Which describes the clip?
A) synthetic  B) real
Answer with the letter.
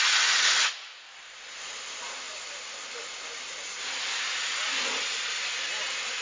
B